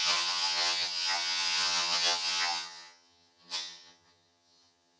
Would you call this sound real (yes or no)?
no